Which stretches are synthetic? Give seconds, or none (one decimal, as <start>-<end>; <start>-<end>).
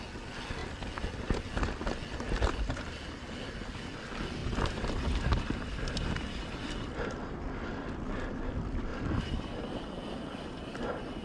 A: 4.4-7.2; 8.9-9.7